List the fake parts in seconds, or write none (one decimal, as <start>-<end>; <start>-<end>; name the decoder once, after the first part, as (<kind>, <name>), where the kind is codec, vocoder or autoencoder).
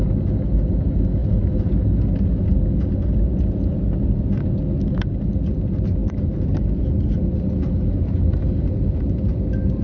none